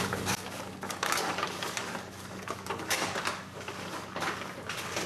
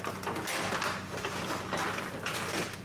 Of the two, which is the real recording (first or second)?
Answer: second